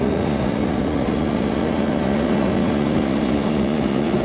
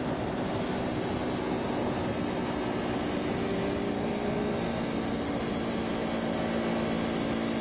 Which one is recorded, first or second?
second